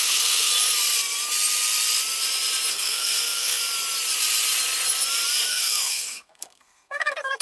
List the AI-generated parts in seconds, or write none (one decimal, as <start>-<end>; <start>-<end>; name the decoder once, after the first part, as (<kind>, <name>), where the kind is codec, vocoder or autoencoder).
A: 0.0-0.5 (codec, SNAC); 2.7-3.6; 5.5-7.4